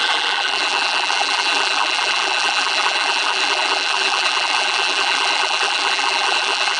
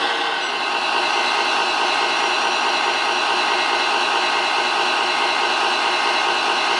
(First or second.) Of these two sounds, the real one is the second